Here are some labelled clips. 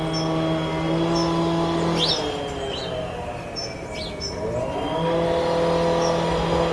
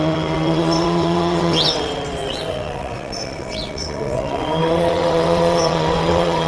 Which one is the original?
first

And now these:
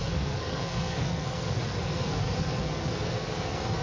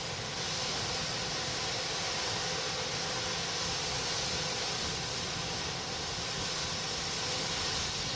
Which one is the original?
second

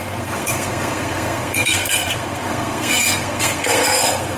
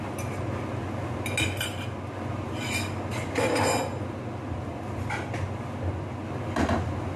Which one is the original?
second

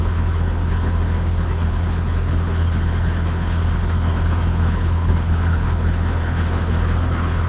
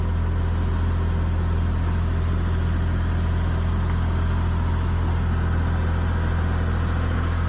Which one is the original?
second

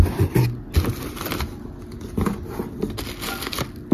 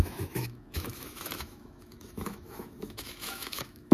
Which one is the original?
first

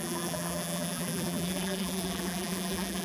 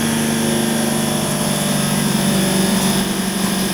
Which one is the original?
second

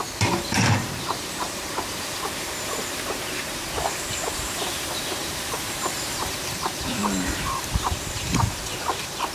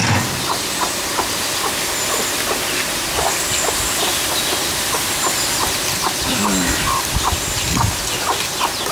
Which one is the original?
second